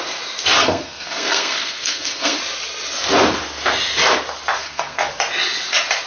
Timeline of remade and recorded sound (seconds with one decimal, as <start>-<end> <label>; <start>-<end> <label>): 0.0-0.6 recorded; 0.6-2.4 remade; 2.4-4.6 recorded; 4.6-5.1 remade; 5.1-6.1 recorded